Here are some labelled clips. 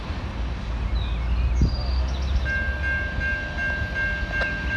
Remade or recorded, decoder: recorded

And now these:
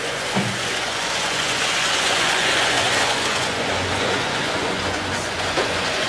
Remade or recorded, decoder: remade, vocoder, Vocos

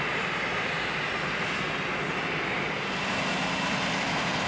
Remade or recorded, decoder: recorded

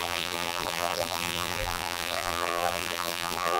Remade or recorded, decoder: remade, vocoder, BigVGAN v2